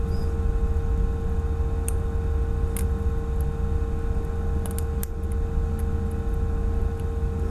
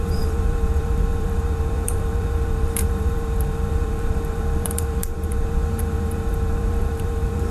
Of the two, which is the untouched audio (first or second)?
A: first